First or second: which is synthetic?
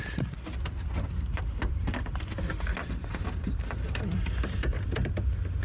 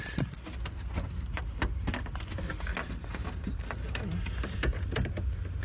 first